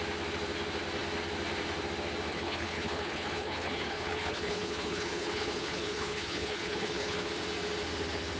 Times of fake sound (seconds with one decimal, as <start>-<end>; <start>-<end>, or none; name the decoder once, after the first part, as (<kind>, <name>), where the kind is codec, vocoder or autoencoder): 2.3-7.3 (codec, HILCodec)